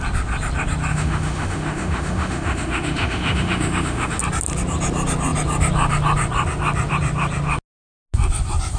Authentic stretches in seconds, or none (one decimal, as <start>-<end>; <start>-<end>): 0.0-0.9; 4.2-8.8